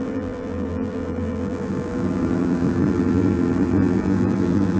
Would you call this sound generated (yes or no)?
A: yes